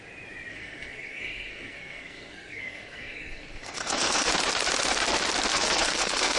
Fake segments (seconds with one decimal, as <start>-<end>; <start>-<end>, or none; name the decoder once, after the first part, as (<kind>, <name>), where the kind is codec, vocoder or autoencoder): 0.5-4.3 (codec, SNAC); 5.5-6.4